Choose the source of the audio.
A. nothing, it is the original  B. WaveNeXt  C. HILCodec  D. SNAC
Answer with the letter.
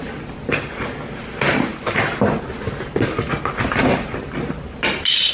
A